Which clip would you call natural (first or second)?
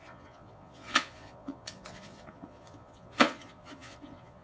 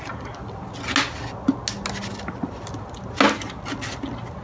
second